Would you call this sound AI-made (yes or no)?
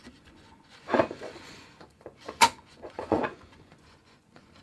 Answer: yes